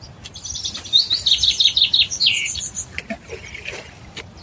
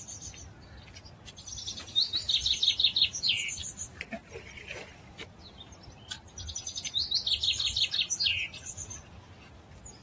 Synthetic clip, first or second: first